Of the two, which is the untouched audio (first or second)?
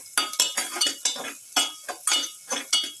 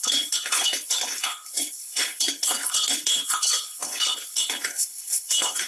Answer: first